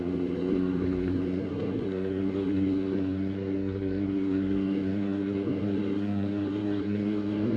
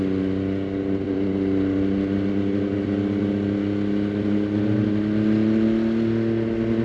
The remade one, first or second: first